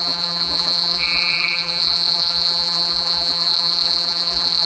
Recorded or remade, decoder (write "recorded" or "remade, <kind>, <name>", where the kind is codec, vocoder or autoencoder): remade, vocoder, BigVGAN v2